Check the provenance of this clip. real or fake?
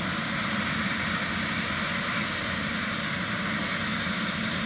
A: real